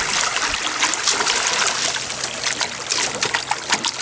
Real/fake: real